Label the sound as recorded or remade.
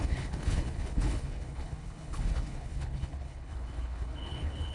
remade